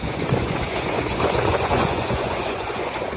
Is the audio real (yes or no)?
no